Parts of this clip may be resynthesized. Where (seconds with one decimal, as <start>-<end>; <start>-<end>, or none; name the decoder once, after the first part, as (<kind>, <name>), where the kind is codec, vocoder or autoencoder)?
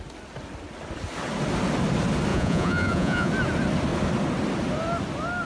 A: 2.3-3.3 (vocoder, Vocos)